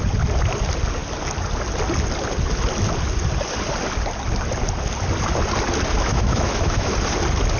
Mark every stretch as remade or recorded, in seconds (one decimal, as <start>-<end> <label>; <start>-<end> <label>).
0.0-6.1 recorded; 6.1-6.9 remade; 6.9-7.6 recorded